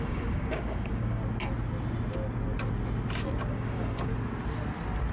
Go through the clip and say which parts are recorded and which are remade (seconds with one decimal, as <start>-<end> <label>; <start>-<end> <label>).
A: 0.0-1.2 remade; 1.2-3.5 recorded; 3.5-4.1 remade; 4.1-5.1 recorded